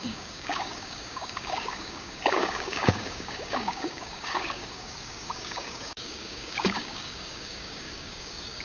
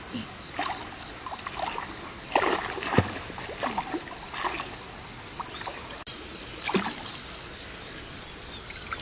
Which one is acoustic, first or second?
second